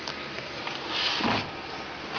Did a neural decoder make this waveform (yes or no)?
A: no